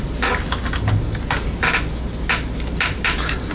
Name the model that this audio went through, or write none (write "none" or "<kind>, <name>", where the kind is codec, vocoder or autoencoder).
none